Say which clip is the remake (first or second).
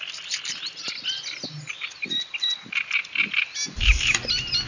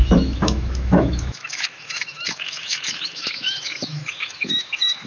second